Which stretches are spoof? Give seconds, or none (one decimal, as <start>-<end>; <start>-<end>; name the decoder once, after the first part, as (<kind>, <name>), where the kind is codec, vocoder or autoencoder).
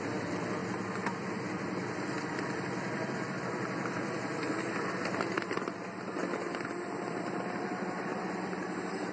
0.0-6.2 (vocoder, BigVGAN v2); 7.0-8.1